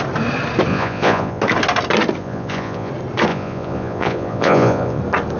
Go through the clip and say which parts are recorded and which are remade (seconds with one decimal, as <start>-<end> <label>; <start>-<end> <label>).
0.0-0.7 recorded; 0.7-1.4 remade; 1.4-2.2 recorded; 2.2-2.9 remade; 2.9-3.3 recorded; 3.3-5.0 remade; 5.0-5.4 recorded